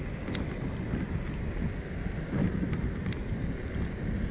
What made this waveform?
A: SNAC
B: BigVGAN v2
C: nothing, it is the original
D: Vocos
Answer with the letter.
C